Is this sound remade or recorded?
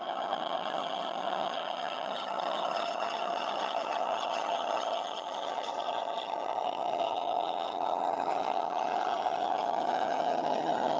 remade